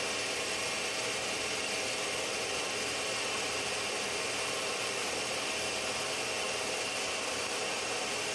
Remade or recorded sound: recorded